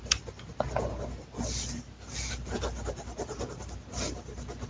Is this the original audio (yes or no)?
yes